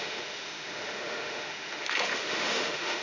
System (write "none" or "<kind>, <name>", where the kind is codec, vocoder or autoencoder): autoencoder, DAC-VAE